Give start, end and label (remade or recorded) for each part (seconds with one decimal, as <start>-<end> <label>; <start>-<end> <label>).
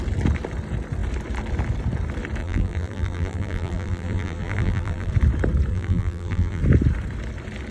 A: 0.0-2.4 recorded; 2.4-5.1 remade; 5.1-5.7 recorded; 5.7-6.6 remade; 6.6-7.7 recorded